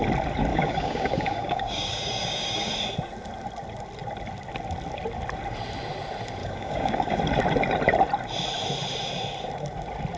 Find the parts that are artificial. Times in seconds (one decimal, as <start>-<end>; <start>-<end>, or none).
0.5-2.7; 6.4-7.2